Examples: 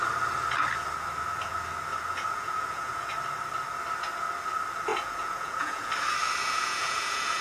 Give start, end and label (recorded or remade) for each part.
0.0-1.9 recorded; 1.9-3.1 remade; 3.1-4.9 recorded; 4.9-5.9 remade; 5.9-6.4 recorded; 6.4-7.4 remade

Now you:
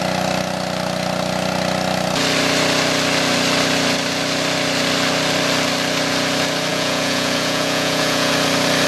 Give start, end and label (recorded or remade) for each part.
0.0-6.7 recorded; 6.7-8.3 remade; 8.3-8.9 recorded

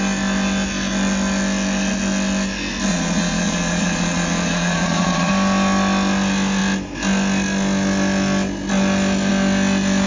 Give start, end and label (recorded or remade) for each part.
0.0-2.9 recorded; 2.9-5.3 remade; 5.3-10.1 recorded

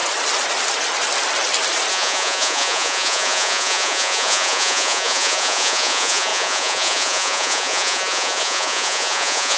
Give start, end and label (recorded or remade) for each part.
0.0-1.9 recorded; 1.9-9.6 remade